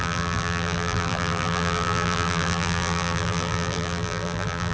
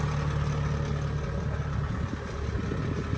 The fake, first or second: first